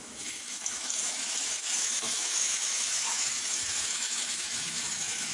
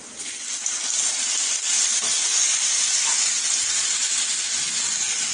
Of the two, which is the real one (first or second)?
second